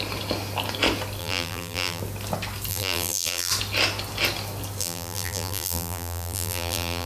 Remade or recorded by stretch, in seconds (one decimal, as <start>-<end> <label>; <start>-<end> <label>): 0.0-1.2 recorded; 1.2-2.0 remade; 2.0-2.7 recorded; 2.7-3.5 remade; 3.5-4.8 recorded; 4.8-7.1 remade